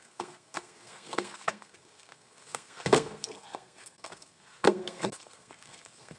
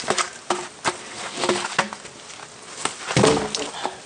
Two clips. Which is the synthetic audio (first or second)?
first